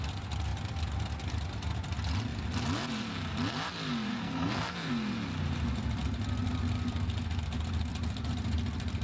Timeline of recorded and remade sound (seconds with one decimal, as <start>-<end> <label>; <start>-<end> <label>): 0.0-4.1 recorded; 4.1-4.9 remade; 4.9-9.0 recorded